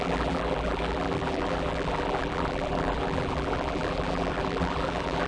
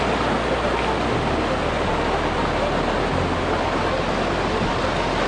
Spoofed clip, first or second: first